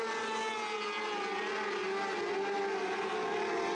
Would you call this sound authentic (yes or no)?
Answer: yes